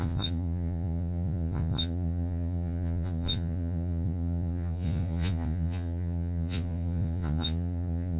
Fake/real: fake